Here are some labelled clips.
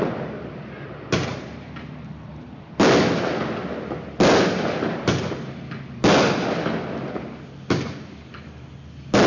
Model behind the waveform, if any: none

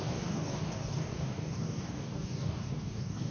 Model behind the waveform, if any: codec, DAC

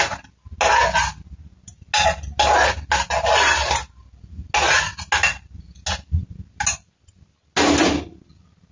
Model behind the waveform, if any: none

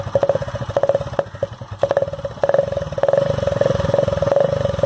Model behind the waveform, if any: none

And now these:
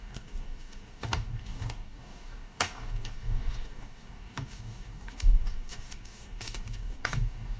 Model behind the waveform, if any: codec, DAC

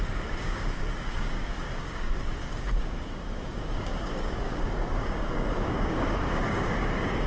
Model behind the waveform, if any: codec, DAC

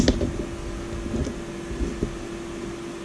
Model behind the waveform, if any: none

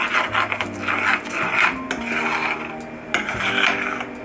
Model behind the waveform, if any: none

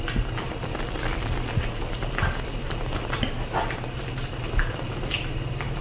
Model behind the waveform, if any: none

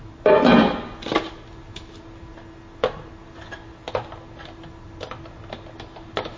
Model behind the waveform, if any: none